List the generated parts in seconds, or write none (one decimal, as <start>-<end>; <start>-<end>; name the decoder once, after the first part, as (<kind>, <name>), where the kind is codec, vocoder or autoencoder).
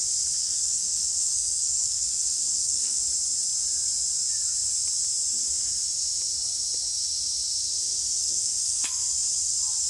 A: 0.4-3.0 (codec, SNAC); 8.2-9.0